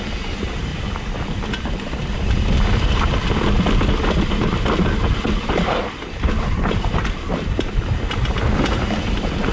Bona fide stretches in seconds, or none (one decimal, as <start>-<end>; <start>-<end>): 0.0-0.7; 3.1-9.5